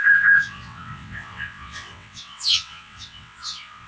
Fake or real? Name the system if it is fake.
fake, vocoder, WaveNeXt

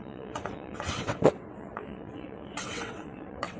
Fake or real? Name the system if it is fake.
fake, vocoder, WaveNeXt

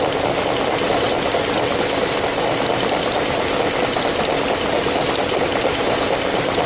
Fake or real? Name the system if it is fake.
real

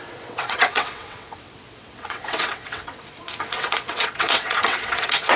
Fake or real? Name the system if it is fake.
fake, vocoder, WaveNeXt